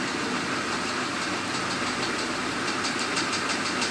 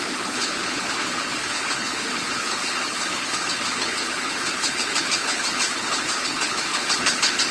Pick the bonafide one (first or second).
first